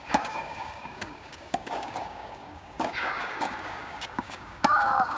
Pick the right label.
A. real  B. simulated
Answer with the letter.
B